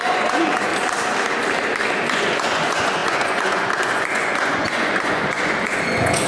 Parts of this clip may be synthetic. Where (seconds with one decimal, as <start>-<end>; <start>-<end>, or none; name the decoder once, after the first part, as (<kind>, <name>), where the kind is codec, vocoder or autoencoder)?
0.0-0.7 (vocoder, Vocos); 2.1-6.3